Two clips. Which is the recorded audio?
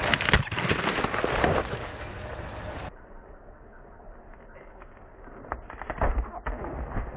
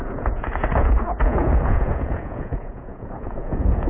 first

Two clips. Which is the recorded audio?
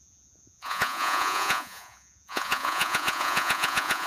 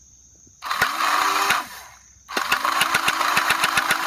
second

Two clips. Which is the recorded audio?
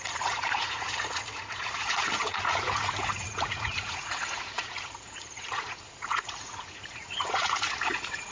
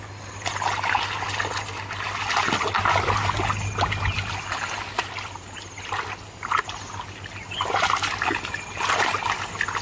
second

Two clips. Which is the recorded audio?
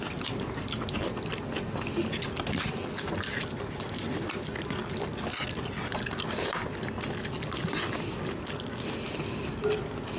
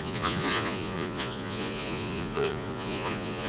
first